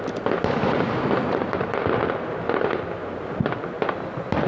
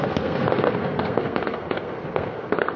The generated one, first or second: second